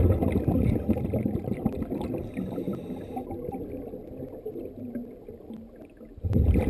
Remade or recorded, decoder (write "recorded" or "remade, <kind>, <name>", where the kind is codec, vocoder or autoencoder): recorded